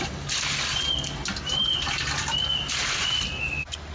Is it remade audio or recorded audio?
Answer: recorded